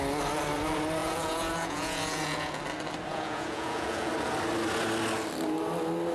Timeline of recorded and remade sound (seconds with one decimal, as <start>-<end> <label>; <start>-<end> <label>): 0.0-1.0 recorded; 1.0-2.6 remade; 2.6-3.1 recorded; 3.1-4.1 remade; 4.1-6.1 recorded